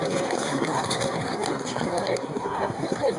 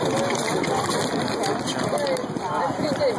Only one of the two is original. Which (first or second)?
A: second